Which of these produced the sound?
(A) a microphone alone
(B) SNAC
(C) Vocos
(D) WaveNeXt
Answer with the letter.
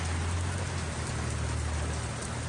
A